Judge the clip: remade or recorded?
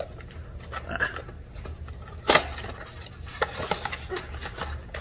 recorded